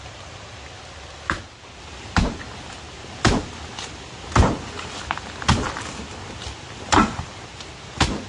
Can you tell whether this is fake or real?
real